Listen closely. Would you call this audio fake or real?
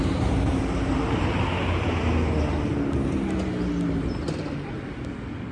real